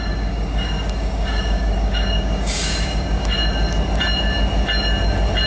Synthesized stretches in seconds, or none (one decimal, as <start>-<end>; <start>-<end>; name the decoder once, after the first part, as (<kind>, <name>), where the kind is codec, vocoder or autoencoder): 0.0-3.4 (codec, DAC)